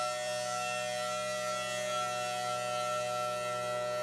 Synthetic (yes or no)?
no